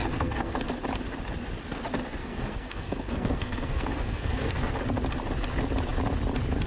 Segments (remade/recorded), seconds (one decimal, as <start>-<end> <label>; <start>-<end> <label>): 0.0-0.6 remade; 0.6-2.2 recorded; 2.2-4.7 remade; 4.7-6.7 recorded